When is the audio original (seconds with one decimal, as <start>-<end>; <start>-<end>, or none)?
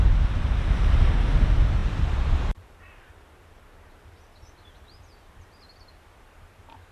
0.0-1.8; 5.9-6.9